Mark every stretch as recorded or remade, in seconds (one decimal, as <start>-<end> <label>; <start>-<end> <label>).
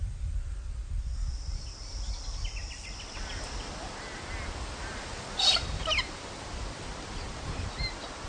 0.0-8.3 recorded